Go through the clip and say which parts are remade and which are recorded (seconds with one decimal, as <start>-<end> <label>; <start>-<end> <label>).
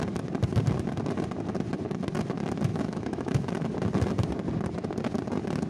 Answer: 0.0-2.7 recorded; 2.7-3.5 remade; 3.5-5.7 recorded